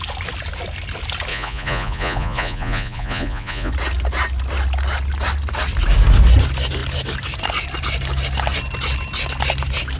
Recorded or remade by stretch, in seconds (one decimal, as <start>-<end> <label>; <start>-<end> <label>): 0.0-1.3 recorded; 1.3-3.7 remade; 3.7-10.0 recorded